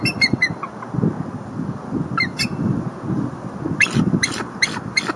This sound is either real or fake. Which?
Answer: real